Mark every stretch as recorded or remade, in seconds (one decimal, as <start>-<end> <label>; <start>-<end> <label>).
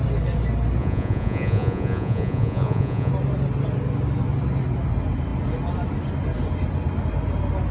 0.0-0.8 recorded; 0.8-3.1 remade; 3.1-7.7 recorded